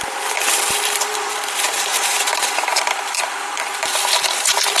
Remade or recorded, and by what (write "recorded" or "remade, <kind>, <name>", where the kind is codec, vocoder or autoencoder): remade, vocoder, BigVGAN v2